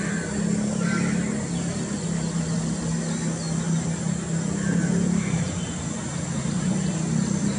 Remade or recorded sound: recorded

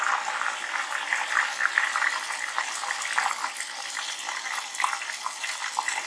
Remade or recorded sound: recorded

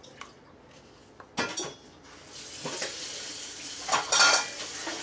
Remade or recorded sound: recorded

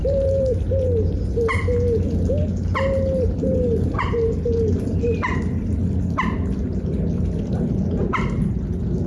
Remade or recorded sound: recorded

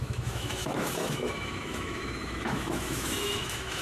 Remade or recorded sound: remade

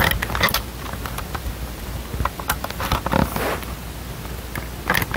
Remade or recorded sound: recorded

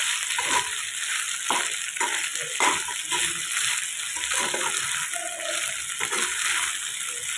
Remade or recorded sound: recorded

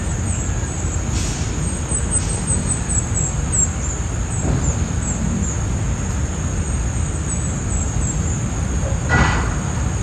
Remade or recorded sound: recorded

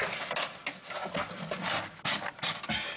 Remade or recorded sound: recorded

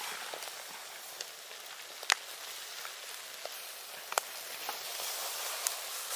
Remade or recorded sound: recorded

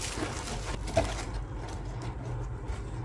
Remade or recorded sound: recorded